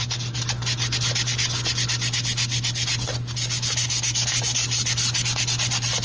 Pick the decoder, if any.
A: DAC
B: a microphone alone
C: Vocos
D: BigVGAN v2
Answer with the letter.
B